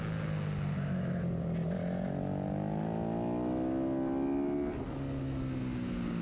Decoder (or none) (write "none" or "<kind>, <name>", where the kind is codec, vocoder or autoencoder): none